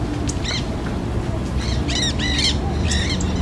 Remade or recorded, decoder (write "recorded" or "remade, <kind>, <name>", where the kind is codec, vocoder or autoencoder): recorded